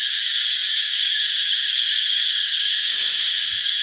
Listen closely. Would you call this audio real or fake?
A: fake